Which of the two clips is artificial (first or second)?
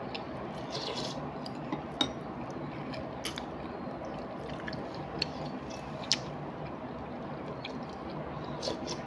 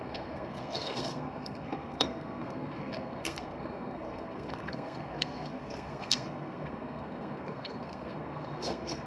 second